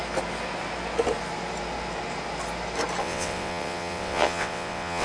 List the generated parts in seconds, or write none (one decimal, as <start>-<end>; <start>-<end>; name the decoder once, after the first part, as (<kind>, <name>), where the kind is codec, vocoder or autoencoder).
3.0-5.0 (vocoder, WaveNeXt)